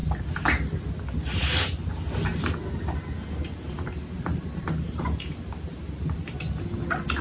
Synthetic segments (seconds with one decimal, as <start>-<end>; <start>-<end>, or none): none